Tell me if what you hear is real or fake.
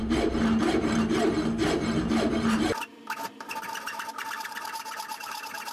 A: fake